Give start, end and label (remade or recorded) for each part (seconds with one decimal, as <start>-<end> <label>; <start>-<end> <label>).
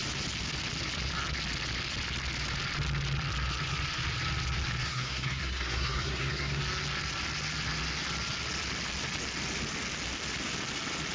0.0-4.8 recorded; 4.8-6.6 remade; 6.6-11.1 recorded